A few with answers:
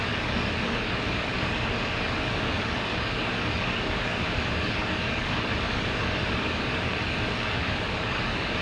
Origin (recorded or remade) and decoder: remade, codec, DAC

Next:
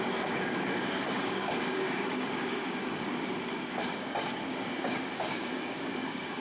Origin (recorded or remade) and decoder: remade, codec, DAC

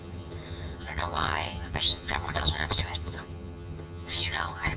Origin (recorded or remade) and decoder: remade, vocoder, HiFi-GAN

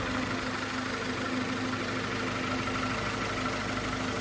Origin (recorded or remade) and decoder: recorded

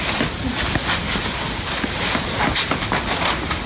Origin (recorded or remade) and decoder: recorded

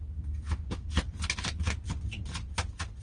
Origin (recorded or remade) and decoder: recorded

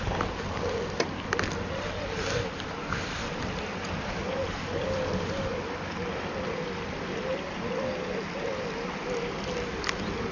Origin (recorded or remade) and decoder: recorded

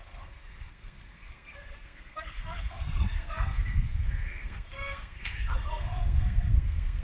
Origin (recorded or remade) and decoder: remade, codec, SNAC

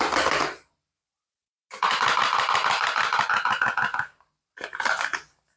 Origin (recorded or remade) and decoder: recorded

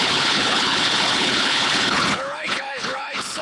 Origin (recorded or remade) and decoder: remade, codec, HILCodec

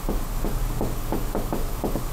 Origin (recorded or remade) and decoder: remade, codec, DAC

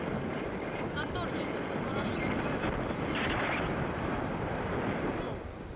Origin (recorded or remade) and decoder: recorded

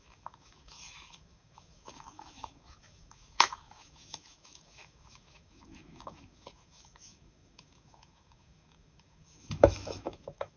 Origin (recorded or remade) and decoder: remade, autoencoder, DAC-VAE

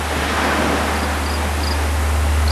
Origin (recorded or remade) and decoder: recorded